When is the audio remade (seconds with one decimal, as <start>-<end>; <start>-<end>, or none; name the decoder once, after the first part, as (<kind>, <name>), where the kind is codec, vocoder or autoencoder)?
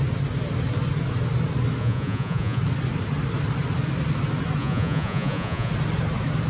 1.8-2.6 (vocoder, Vocos); 4.6-5.7